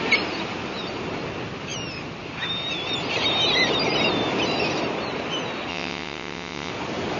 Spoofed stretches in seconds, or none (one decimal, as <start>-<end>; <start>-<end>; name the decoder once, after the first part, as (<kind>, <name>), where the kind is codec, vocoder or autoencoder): 5.7-6.7 (vocoder, WaveNeXt)